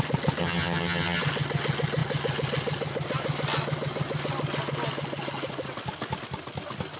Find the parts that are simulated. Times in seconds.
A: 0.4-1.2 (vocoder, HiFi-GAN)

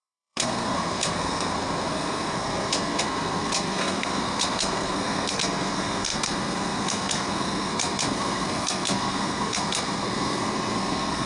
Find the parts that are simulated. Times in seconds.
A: 0.0-11.3 (codec, SNAC)

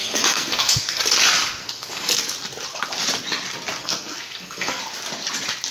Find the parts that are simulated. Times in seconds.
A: 0.0-1.0 (codec, SNAC); 1.6-2.2; 3.8-4.8

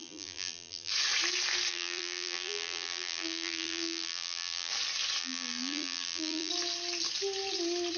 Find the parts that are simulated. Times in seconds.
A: 0.0-0.9 (vocoder, BigVGAN v2); 1.7-4.7; 5.2-6.5

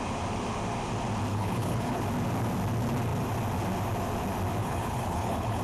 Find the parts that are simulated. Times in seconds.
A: 1.3-2.0 (codec, HILCodec); 4.6-5.6

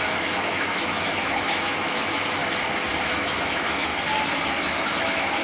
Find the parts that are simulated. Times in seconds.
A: 0.0-2.4 (autoencoder, DAC-VAE); 3.0-3.9; 5.0-5.4